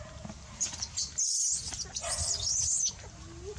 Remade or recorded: recorded